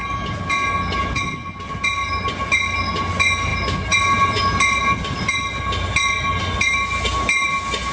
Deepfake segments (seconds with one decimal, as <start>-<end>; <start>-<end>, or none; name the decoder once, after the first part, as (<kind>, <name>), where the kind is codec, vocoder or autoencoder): none